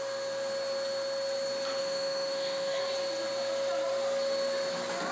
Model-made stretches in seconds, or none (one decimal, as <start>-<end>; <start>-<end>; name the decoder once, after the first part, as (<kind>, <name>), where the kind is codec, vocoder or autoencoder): 1.8-2.8 (autoencoder, DAC-VAE)